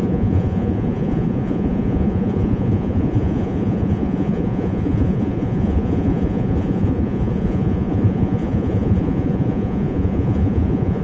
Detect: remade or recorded remade